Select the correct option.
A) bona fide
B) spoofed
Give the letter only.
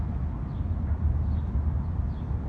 A